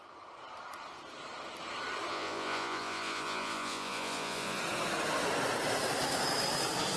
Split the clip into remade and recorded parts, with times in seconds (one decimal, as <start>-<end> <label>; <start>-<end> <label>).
0.0-2.1 recorded; 2.1-4.6 remade; 4.6-7.0 recorded